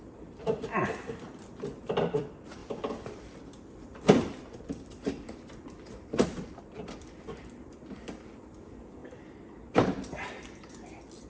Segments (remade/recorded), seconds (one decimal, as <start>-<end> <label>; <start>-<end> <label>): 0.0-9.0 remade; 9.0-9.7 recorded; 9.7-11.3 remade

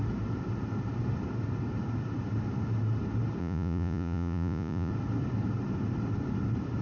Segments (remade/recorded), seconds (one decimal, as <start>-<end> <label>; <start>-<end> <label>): 0.0-3.4 recorded; 3.4-4.9 remade; 4.9-6.8 recorded

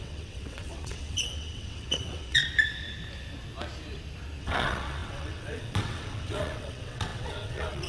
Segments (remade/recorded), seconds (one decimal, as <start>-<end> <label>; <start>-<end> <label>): 0.0-2.4 remade; 2.4-4.4 recorded; 4.4-7.9 remade

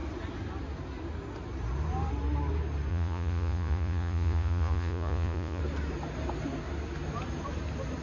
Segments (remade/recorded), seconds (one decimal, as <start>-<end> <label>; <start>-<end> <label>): 0.0-2.9 recorded; 2.9-5.6 remade; 5.6-8.0 recorded

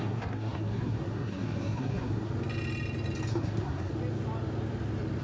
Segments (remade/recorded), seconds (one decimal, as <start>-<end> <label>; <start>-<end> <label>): 0.0-2.3 remade; 2.3-3.3 recorded; 3.3-3.9 remade; 3.9-5.2 recorded